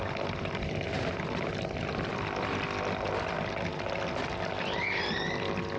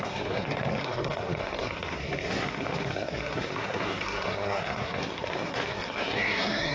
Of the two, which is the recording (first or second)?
first